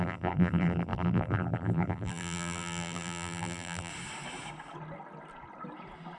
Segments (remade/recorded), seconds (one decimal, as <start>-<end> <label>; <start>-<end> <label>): 0.0-3.9 remade; 3.9-6.2 recorded